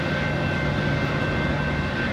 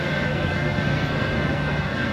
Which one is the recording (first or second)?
first